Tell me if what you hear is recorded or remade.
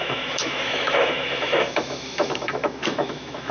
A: remade